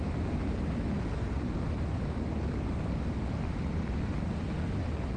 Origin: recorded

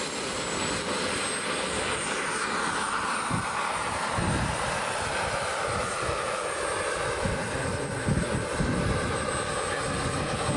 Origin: recorded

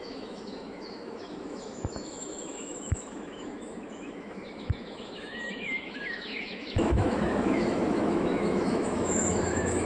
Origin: remade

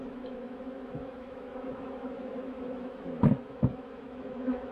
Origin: remade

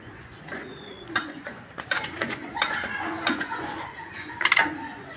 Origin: remade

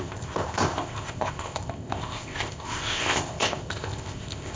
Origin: remade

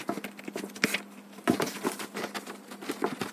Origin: recorded